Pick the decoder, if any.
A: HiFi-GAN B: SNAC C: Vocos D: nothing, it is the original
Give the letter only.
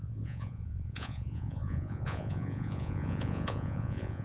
C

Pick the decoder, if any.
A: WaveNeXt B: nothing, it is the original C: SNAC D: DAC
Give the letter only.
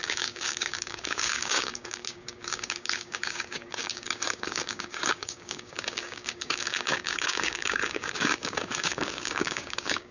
D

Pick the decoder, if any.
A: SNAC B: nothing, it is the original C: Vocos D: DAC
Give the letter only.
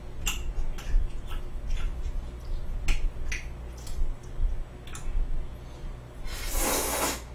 B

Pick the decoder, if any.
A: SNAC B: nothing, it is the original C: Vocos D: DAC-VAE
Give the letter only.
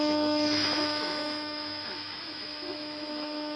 D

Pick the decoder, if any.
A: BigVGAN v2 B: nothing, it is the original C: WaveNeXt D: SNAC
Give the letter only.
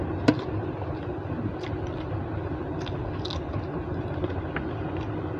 B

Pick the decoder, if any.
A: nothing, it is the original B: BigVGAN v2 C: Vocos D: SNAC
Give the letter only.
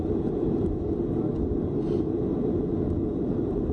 A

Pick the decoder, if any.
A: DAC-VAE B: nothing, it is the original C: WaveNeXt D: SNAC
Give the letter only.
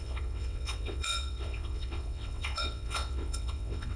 C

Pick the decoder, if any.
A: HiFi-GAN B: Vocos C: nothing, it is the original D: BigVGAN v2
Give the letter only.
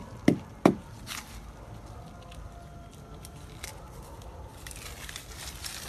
C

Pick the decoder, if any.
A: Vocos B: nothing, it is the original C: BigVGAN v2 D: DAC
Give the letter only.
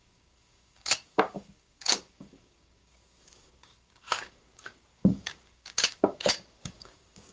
D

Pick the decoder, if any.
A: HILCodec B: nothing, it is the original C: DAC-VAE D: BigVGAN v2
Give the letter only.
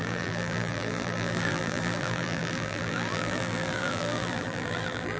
D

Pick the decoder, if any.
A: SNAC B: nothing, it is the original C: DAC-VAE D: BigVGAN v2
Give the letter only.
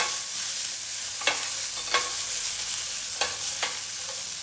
B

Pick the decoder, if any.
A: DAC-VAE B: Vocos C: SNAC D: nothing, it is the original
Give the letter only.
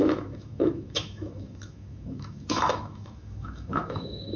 A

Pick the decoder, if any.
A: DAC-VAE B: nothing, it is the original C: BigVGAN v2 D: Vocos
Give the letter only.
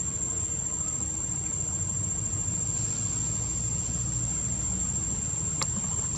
B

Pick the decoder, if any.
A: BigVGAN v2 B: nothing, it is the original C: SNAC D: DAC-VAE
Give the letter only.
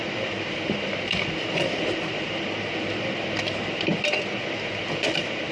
B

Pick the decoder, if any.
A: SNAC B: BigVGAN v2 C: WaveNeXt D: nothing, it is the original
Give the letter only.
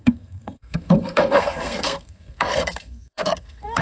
A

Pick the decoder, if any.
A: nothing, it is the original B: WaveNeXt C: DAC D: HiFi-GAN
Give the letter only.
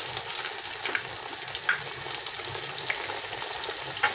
A